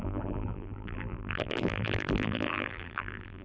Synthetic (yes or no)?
yes